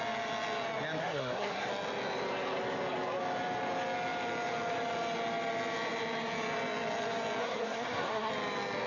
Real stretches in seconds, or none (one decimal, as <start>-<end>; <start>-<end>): 0.0-1.0; 1.7-7.4; 8.3-8.9